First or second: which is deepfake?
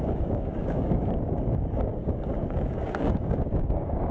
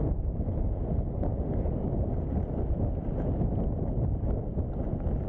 first